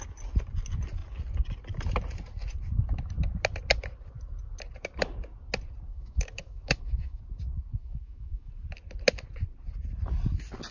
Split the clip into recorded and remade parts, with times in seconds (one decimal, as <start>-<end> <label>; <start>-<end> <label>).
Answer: 0.0-5.9 recorded; 5.9-7.2 remade; 7.2-7.8 recorded; 7.8-8.5 remade; 8.5-10.7 recorded